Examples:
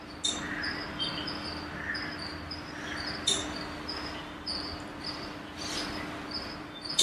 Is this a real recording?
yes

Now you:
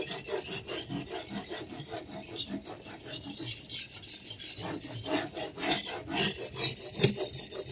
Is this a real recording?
yes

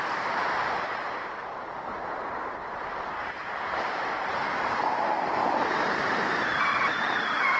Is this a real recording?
no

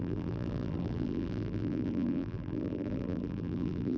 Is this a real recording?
no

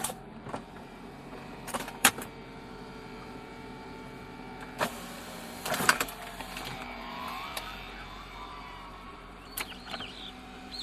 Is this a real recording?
no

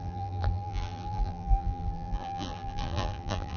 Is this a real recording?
no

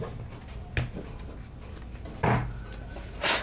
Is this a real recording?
yes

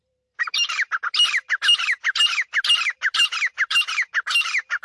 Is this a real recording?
no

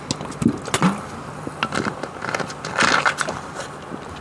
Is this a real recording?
yes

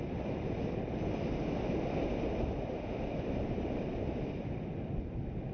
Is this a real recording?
no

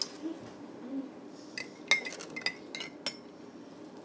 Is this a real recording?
yes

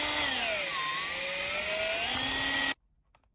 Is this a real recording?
yes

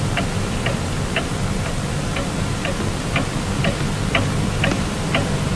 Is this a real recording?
no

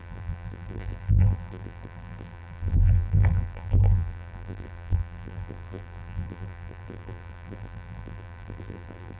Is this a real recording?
no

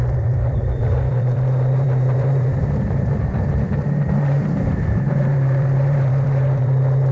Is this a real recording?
no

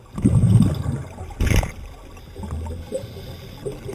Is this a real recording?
yes